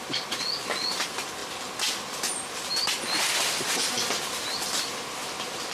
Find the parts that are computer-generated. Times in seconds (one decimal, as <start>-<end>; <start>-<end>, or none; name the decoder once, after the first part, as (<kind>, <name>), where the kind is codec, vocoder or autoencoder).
none